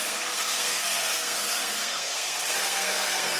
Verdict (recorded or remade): remade